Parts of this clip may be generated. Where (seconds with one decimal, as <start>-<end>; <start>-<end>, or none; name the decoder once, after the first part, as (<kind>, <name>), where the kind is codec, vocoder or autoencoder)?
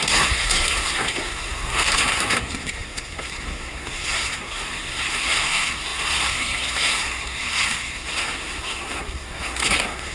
0.0-10.1 (codec, SNAC)